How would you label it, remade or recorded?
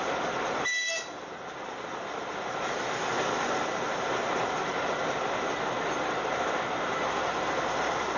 recorded